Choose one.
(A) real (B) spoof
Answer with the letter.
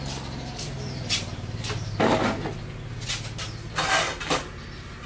A